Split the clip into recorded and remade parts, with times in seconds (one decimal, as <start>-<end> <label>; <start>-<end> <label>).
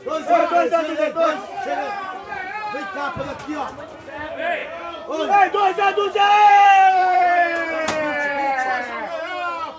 0.0-0.4 remade; 0.4-2.0 recorded; 2.0-4.6 remade; 4.6-6.5 recorded; 6.5-9.8 remade